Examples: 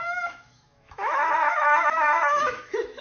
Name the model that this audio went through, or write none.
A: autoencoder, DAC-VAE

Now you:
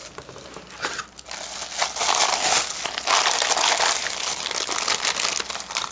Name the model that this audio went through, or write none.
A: none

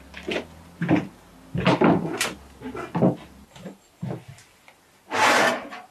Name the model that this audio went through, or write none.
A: none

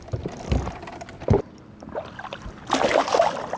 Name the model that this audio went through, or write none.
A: none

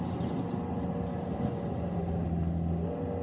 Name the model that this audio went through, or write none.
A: none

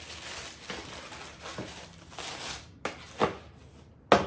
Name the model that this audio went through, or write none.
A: none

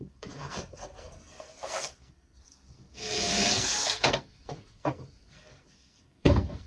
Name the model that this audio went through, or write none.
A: codec, SNAC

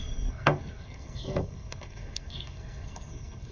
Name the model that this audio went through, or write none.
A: codec, SNAC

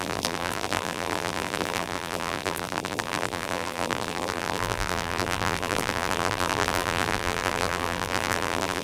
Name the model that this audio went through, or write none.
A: vocoder, BigVGAN v2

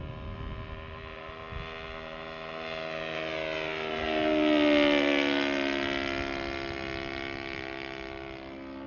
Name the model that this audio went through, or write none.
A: none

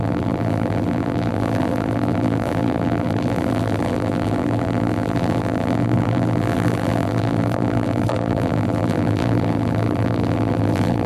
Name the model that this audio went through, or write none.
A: vocoder, BigVGAN v2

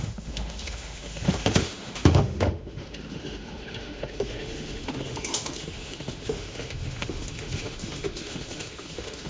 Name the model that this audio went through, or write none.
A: autoencoder, DAC-VAE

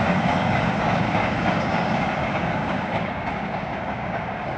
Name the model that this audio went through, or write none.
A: codec, DAC